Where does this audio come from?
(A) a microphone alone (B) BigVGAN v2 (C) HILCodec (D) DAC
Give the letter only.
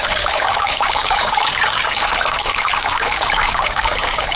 D